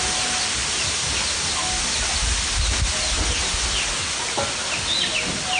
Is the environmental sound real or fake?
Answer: real